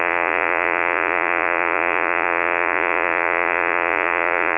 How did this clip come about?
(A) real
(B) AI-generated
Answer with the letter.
B